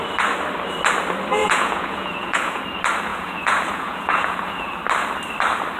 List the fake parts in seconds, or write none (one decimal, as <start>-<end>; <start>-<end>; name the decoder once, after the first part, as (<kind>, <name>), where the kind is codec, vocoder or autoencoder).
1.4-2.6 (vocoder, Vocos); 3.1-4.7